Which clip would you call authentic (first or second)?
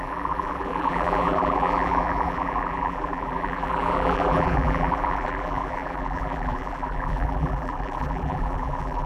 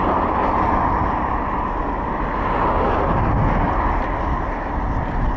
second